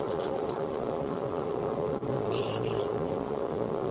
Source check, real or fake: fake